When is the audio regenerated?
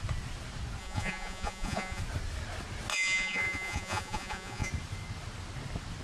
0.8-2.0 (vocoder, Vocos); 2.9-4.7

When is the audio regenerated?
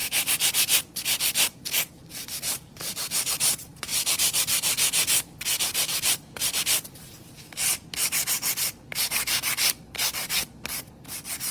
3.9-6.6 (vocoder, BigVGAN v2)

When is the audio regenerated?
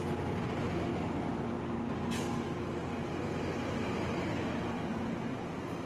none